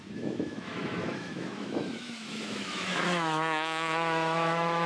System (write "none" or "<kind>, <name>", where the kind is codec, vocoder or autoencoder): autoencoder, DAC-VAE